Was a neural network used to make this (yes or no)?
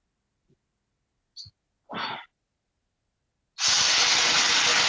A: no